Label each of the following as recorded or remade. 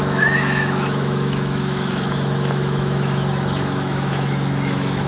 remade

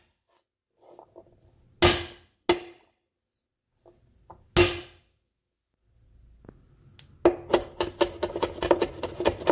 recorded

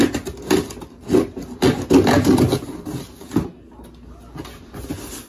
recorded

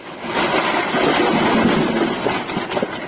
recorded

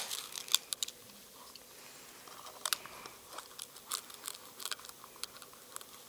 recorded